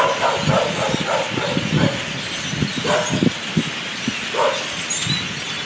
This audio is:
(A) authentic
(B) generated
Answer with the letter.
A